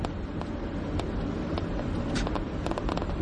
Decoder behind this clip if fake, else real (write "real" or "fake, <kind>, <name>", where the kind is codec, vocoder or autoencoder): real